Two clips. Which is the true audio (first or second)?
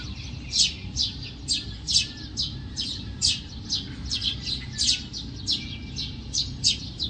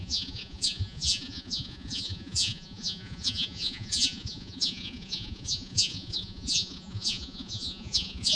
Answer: first